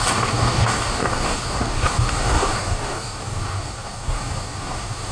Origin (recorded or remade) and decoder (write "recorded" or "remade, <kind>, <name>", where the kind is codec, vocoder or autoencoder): remade, codec, DAC